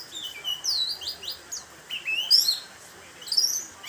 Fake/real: real